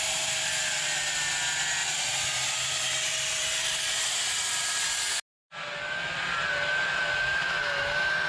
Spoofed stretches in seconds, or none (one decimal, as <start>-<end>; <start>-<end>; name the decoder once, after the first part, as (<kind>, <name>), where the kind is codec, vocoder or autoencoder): 1.8-3.8 (vocoder, BigVGAN v2)

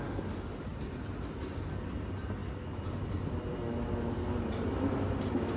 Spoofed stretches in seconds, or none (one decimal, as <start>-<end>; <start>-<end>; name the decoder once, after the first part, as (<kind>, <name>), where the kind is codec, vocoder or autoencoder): 0.7-1.7 (vocoder, BigVGAN v2)